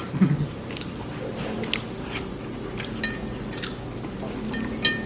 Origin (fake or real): real